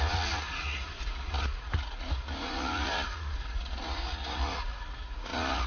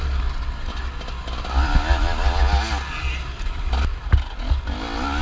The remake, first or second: first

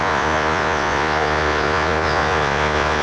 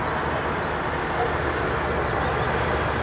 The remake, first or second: first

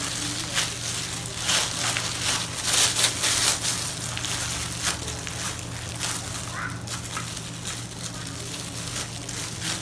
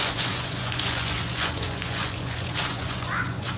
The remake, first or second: second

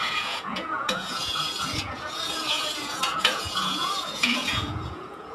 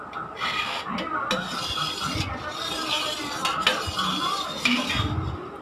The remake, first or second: first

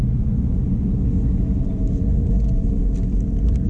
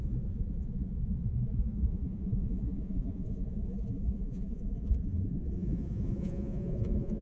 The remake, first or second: second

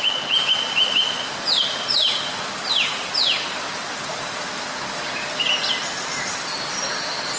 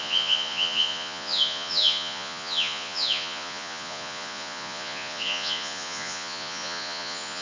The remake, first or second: second